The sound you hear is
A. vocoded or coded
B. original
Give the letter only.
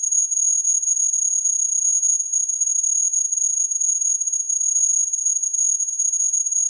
A